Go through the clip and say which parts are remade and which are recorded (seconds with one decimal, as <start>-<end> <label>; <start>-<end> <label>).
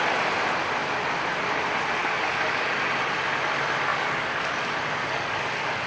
0.0-2.0 recorded; 2.0-2.7 remade; 2.7-3.9 recorded; 3.9-4.4 remade; 4.4-5.0 recorded; 5.0-5.9 remade